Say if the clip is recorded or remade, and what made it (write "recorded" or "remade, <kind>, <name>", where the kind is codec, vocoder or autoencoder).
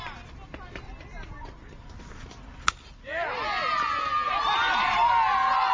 recorded